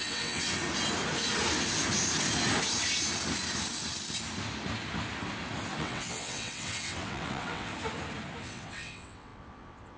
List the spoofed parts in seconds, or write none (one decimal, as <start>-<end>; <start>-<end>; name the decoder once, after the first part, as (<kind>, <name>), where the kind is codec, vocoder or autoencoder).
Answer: 0.0-0.6 (vocoder, WaveNeXt); 5.8-7.7; 8.4-10.0